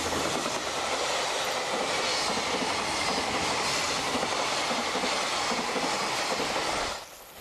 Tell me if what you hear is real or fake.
real